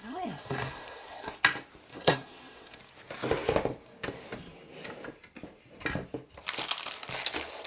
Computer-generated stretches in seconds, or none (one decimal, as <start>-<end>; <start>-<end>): 0.0-1.3; 1.9-2.8